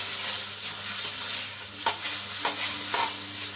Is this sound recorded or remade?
recorded